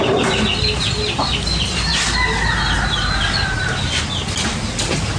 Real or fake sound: real